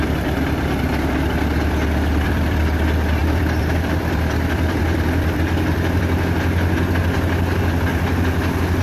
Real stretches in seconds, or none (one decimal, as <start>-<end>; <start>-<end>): 0.0-2.1; 2.6-3.2; 6.0-8.8